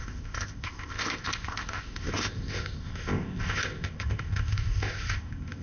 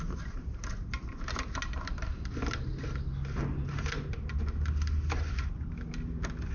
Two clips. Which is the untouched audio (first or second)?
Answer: second